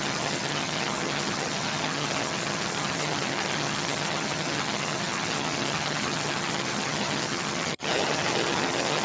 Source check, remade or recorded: remade